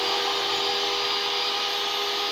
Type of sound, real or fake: real